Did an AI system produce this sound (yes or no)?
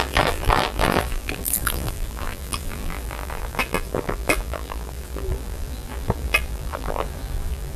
yes